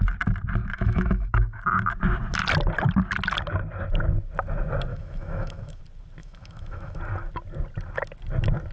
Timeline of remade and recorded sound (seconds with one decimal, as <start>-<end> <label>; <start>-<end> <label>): 0.0-0.7 recorded; 0.7-1.6 remade; 1.6-4.9 recorded; 4.9-5.8 remade; 5.8-6.2 recorded; 6.2-7.0 remade; 7.0-8.7 recorded